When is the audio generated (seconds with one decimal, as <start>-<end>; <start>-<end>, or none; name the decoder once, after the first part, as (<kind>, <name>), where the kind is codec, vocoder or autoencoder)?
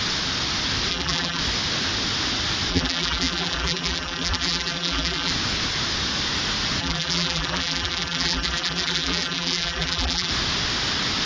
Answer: 0.9-1.4 (vocoder, BigVGAN v2); 2.7-5.3; 6.8-10.3